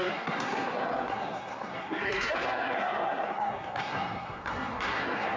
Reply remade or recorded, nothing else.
remade